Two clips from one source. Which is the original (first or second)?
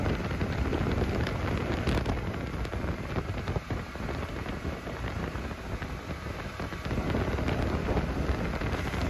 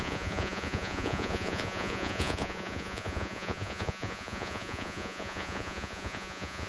first